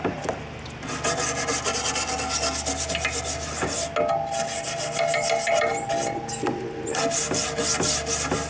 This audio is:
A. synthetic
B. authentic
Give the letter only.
B